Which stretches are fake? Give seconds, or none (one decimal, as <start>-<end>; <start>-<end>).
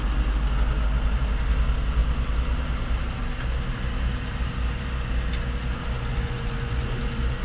6.1-7.0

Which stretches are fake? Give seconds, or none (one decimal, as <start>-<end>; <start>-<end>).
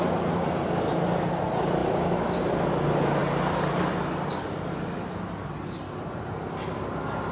none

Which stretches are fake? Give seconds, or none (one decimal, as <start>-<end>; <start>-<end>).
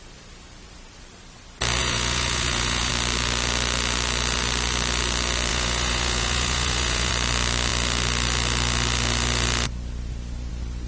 1.8-2.9; 5.5-7.1